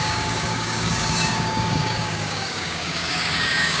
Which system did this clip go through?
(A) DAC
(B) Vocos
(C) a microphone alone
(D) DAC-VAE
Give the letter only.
A